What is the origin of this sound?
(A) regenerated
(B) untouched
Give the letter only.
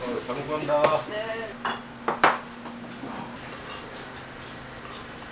B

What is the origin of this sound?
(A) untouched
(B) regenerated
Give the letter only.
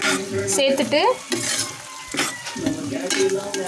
A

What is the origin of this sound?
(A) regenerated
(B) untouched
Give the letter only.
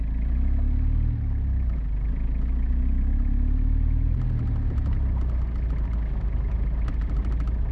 B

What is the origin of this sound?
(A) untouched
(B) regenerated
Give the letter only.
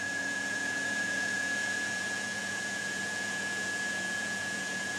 B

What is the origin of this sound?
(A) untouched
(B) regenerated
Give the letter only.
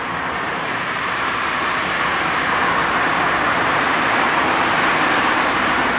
B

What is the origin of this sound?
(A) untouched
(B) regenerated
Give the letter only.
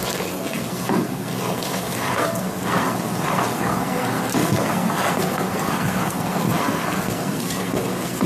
B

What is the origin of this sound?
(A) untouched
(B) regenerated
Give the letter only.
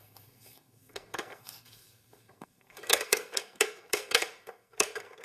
B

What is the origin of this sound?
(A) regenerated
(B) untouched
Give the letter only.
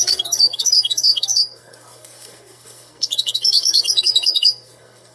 A